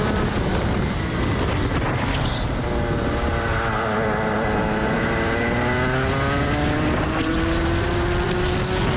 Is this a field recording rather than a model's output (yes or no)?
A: yes